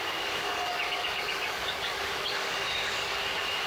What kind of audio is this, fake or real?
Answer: fake